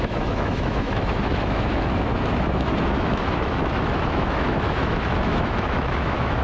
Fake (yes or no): yes